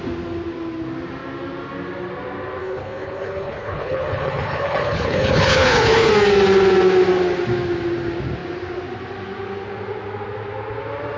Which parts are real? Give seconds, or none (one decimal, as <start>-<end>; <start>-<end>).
0.0-2.6; 6.1-11.2